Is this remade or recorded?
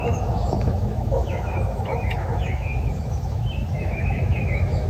remade